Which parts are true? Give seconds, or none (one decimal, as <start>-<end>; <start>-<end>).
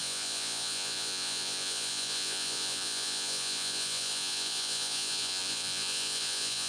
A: none